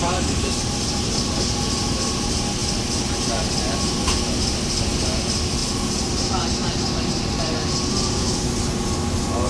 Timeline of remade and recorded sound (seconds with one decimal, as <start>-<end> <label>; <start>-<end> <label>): 0.0-9.5 recorded